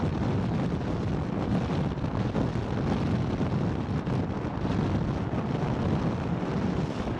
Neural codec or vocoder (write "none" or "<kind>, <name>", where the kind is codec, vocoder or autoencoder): none